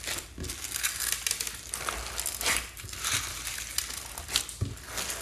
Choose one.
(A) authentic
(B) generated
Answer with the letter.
A